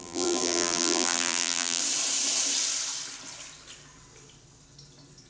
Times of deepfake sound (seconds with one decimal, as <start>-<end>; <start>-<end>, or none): 0.0-1.8